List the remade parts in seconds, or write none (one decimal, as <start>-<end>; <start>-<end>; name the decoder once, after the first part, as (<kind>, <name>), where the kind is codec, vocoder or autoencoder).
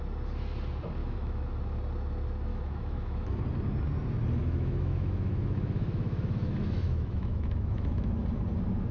1.0-1.5 (autoencoder, DAC-VAE); 2.5-3.4; 4.4-8.2